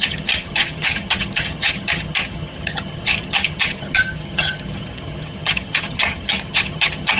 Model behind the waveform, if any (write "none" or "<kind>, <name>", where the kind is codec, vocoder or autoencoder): vocoder, HiFi-GAN